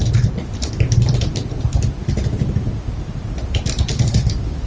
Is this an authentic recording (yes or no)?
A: no